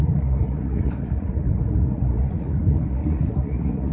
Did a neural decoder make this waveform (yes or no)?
yes